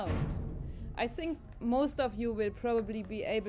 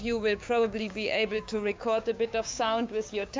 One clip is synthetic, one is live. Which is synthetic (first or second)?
second